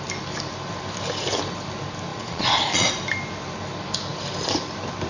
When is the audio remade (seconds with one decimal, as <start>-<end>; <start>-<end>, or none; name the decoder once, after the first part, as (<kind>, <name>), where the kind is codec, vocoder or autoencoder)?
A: 2.1-2.9 (vocoder, Vocos)